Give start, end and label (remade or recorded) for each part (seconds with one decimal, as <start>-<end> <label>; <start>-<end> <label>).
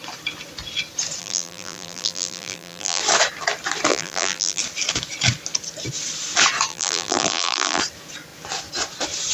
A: 0.0-1.2 recorded; 1.2-3.0 remade; 3.0-3.9 recorded; 3.9-4.6 remade; 4.6-6.7 recorded; 6.7-7.8 remade; 7.8-9.3 recorded